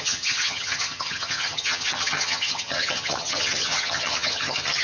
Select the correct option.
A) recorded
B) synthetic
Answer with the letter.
B